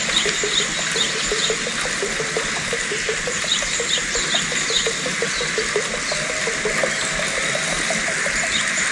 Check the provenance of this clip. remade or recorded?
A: recorded